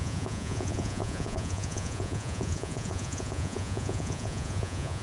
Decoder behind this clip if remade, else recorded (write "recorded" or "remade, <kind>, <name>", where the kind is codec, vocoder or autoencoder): remade, vocoder, Vocos